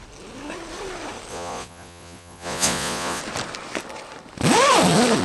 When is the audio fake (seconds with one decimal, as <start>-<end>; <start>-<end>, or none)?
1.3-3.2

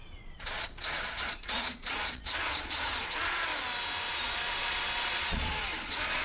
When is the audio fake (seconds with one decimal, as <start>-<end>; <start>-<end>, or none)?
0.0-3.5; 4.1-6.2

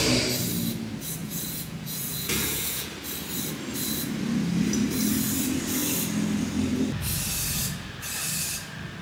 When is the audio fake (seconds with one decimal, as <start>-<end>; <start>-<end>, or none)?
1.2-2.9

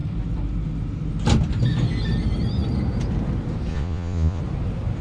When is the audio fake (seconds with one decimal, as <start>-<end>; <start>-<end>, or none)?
3.7-4.4

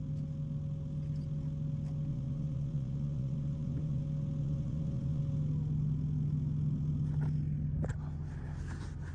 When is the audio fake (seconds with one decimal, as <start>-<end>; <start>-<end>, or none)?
2.1-4.0; 4.4-5.2

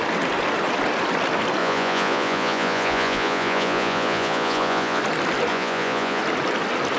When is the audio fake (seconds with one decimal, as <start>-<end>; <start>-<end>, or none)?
1.6-5.0; 5.5-6.2